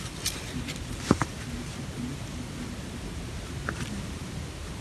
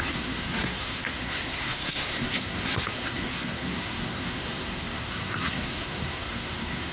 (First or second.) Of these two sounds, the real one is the first